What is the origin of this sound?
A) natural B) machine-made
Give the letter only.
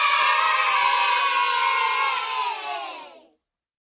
A